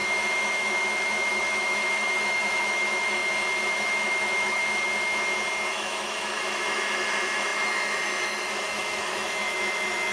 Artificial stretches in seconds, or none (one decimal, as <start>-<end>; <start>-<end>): 0.0-3.2; 3.7-4.6; 5.7-10.1